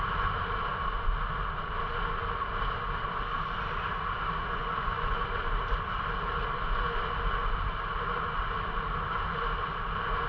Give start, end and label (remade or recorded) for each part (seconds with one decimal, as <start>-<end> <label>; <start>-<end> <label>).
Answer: 0.0-4.4 recorded; 4.4-5.2 remade; 5.2-10.3 recorded